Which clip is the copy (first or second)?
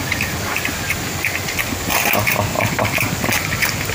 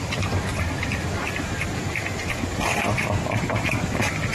second